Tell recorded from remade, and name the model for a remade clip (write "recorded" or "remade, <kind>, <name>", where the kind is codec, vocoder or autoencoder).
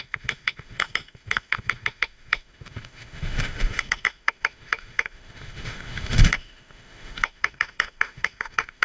remade, autoencoder, DAC-VAE